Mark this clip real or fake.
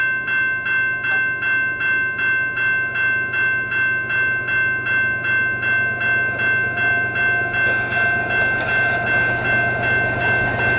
real